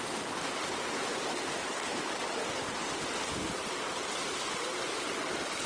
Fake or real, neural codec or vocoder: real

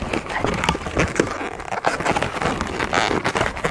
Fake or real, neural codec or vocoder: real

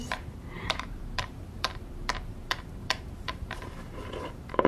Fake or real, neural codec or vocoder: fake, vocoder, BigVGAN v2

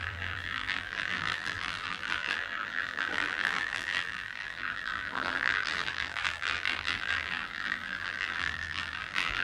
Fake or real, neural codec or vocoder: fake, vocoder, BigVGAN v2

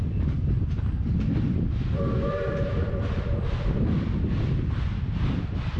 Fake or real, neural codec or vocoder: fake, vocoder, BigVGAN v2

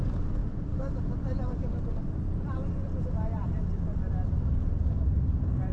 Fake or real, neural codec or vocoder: fake, vocoder, BigVGAN v2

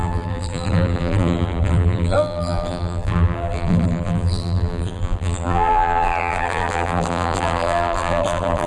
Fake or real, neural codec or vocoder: fake, vocoder, BigVGAN v2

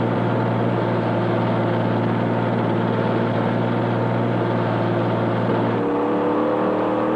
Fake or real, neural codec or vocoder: real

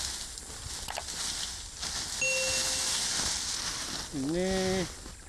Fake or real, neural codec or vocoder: real